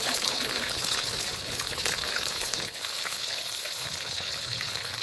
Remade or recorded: remade